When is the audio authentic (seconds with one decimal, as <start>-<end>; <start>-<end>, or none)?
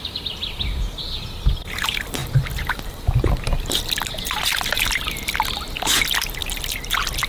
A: 0.0-7.3